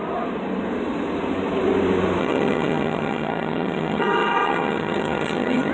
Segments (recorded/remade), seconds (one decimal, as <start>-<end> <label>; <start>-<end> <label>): 0.0-2.2 recorded; 2.2-5.7 remade